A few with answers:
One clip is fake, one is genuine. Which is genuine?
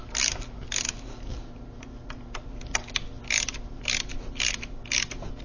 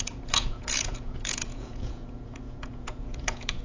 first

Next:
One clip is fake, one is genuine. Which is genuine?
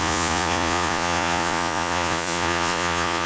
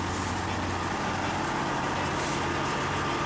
second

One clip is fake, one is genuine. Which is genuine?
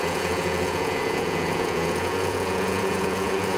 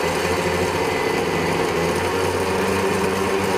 second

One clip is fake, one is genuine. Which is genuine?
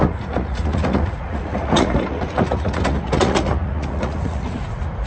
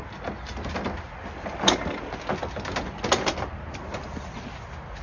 second